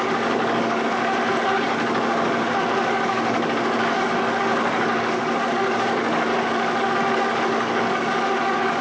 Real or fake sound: fake